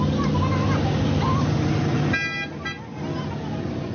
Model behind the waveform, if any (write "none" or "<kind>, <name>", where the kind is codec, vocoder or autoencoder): none